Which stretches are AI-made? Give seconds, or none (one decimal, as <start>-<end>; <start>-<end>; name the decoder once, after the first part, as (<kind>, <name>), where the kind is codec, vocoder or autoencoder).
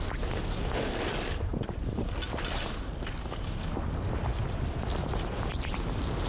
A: none